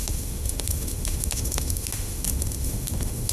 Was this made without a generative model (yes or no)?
no